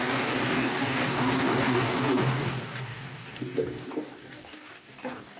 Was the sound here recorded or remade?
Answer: remade